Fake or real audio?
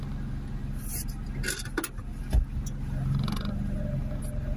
real